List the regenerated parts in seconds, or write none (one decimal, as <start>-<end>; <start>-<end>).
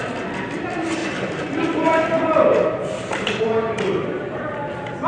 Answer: none